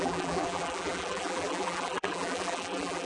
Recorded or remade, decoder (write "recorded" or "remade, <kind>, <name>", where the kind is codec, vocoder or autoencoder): remade, vocoder, BigVGAN v2